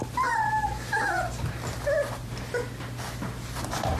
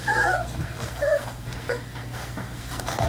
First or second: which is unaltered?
first